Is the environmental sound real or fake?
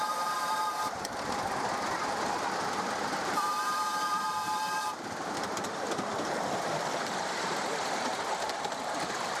fake